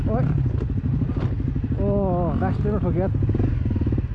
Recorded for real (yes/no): yes